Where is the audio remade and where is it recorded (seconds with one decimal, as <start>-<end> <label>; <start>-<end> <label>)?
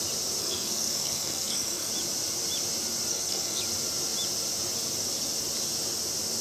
0.0-0.4 recorded; 0.4-1.9 remade; 1.9-3.1 recorded; 3.1-3.6 remade; 3.6-6.4 recorded